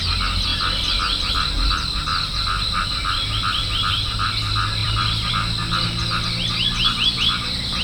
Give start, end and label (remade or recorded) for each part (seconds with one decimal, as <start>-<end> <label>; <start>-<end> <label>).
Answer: 0.0-0.5 recorded; 0.5-1.3 remade; 1.3-4.8 recorded; 4.8-5.3 remade; 5.3-7.8 recorded